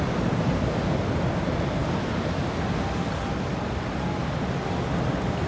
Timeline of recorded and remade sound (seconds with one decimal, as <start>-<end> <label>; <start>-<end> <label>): 0.0-5.5 recorded

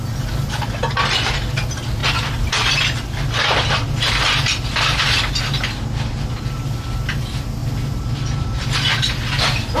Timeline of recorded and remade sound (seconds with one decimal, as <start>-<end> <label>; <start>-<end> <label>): 0.0-9.8 recorded

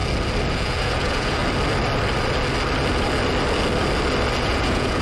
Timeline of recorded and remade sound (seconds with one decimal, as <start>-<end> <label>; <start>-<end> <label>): 0.0-0.5 recorded; 0.5-1.4 remade; 1.4-4.4 recorded; 4.4-5.0 remade